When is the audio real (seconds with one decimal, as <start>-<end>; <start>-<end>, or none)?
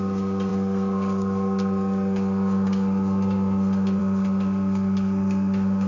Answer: none